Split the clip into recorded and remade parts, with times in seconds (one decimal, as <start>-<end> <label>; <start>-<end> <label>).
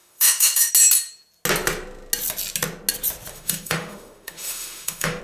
0.0-0.7 remade; 0.7-3.3 recorded; 3.3-5.2 remade